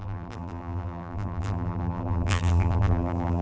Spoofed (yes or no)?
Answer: yes